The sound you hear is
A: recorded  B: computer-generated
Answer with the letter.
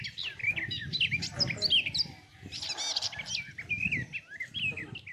A